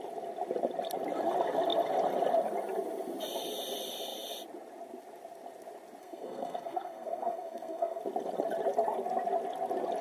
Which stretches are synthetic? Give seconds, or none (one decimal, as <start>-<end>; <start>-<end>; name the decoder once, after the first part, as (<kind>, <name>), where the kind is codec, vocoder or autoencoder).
6.0-8.0 (codec, SNAC)